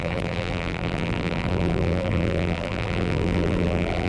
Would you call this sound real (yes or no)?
no